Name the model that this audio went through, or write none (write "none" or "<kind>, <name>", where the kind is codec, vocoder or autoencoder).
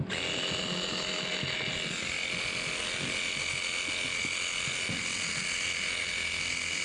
none